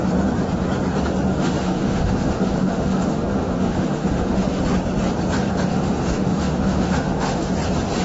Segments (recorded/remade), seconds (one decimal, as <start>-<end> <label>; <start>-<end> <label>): 0.0-1.3 recorded; 1.3-4.6 remade; 4.6-5.7 recorded; 5.7-7.5 remade; 7.5-8.0 recorded